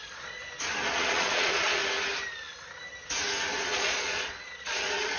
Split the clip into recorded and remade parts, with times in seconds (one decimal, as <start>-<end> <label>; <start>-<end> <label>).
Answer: 0.0-0.4 remade; 0.4-0.9 recorded; 0.9-1.8 remade; 1.8-3.5 recorded; 3.5-5.2 remade